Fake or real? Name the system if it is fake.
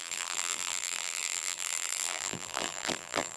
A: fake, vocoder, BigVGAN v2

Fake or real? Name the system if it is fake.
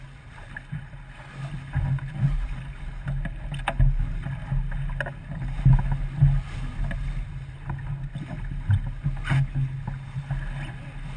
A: real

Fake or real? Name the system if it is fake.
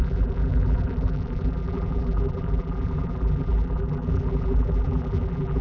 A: fake, vocoder, BigVGAN v2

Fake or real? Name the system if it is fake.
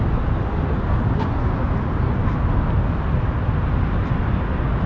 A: real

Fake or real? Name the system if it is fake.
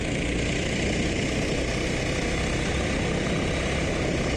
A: real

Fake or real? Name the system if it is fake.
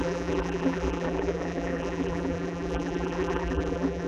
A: fake, vocoder, BigVGAN v2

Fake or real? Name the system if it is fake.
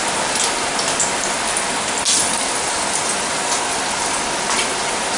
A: real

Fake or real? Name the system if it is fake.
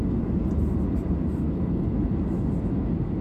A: real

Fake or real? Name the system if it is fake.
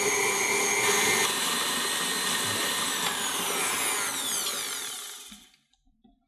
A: real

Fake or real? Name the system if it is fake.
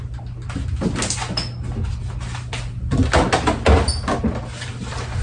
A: real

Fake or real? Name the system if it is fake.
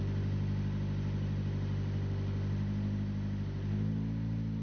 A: real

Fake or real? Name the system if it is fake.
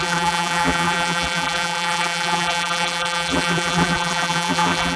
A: fake, vocoder, BigVGAN v2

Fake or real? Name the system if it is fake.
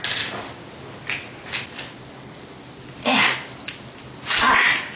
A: real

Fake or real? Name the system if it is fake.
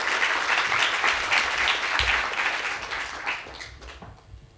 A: real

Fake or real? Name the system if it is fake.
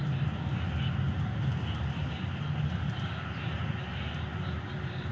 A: real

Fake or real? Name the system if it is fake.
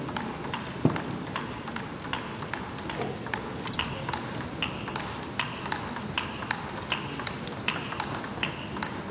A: real